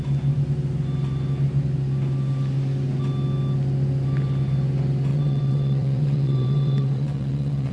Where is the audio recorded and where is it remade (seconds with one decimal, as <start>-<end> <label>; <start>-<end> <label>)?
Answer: 0.0-5.1 recorded; 5.1-7.7 remade